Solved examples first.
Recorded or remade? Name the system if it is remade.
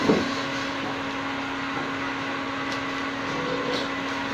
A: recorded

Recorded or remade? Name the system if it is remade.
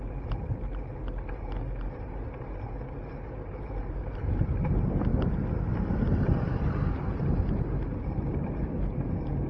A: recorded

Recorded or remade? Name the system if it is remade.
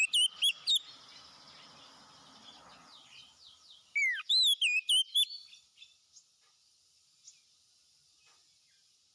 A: recorded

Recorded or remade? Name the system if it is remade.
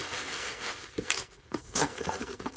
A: remade, codec, SNAC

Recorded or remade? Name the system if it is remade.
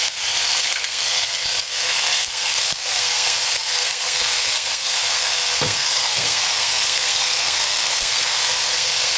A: remade, codec, SNAC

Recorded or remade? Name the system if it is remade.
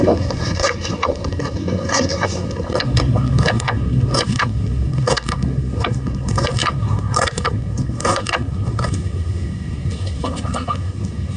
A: remade, codec, SNAC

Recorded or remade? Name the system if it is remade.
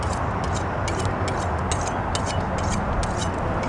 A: recorded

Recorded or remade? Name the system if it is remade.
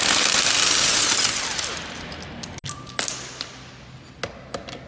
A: recorded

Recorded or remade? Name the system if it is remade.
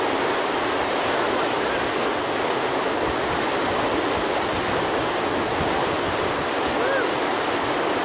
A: recorded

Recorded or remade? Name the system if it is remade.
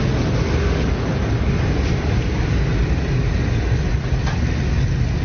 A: recorded